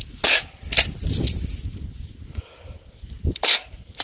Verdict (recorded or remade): recorded